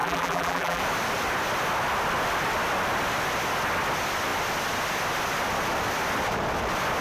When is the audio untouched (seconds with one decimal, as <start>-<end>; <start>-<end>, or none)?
0.8-7.0

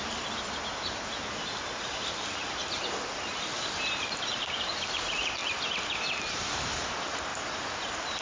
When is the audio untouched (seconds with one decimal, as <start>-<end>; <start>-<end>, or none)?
5.4-6.3

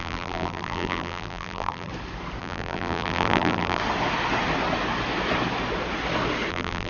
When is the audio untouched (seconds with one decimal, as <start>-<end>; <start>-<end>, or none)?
1.9-2.4; 3.8-6.5

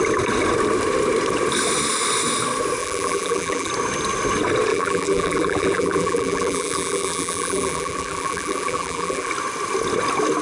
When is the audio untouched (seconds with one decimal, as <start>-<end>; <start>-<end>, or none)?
0.0-2.8; 3.7-4.7; 9.3-10.4

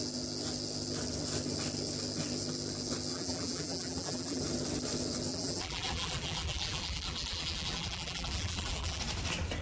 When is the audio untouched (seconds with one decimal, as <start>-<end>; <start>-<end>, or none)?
0.0-3.1; 4.4-5.3; 9.0-9.6

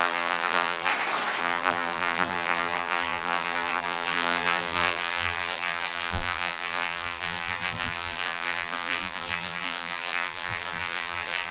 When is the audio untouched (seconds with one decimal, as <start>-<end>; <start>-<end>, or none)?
0.9-1.4

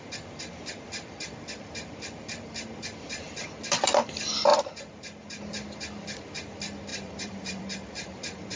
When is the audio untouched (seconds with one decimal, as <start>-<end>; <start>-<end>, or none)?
0.0-6.9; 7.6-8.6